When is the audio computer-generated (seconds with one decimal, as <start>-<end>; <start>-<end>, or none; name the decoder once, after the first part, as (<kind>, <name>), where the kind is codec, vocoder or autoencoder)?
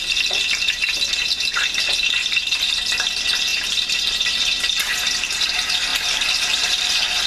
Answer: 3.5-4.4 (vocoder, BigVGAN v2); 5.9-7.3